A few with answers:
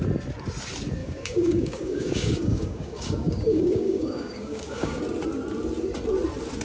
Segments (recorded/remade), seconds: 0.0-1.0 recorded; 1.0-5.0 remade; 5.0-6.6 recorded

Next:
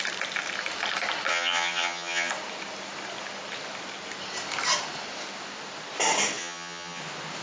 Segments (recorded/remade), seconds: 0.0-1.3 recorded; 1.3-2.3 remade; 2.3-6.4 recorded; 6.4-7.0 remade; 7.0-7.4 recorded

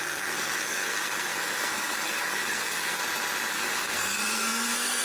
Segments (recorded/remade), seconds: 0.0-3.0 remade; 3.0-3.5 recorded; 3.5-5.0 remade